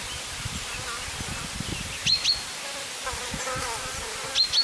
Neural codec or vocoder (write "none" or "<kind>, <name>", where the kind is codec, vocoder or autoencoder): none